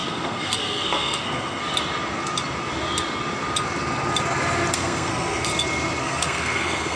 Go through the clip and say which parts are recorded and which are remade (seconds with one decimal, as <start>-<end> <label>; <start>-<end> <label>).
0.0-1.6 remade; 1.6-4.7 recorded; 4.7-5.5 remade; 5.5-6.0 recorded; 6.0-7.0 remade